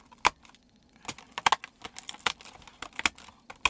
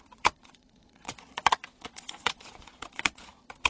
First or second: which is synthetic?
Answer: second